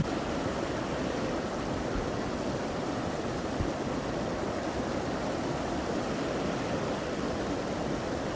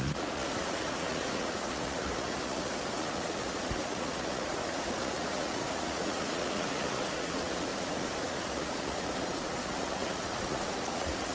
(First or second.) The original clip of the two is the first